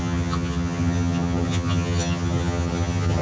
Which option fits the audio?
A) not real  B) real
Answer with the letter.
A